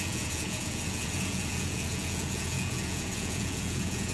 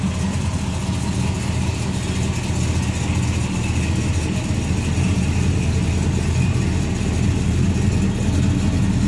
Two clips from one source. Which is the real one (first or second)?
second